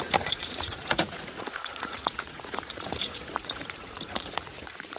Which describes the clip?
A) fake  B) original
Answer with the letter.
A